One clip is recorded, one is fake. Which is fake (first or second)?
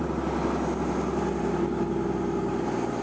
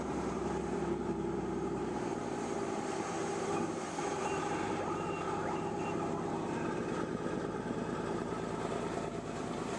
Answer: second